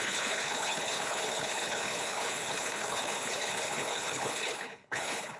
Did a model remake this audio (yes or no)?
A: yes